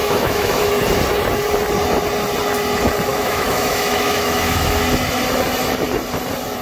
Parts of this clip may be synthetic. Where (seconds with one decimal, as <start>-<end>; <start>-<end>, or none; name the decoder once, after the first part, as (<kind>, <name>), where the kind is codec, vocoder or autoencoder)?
0.0-0.7 (autoencoder, DAC-VAE); 3.1-4.8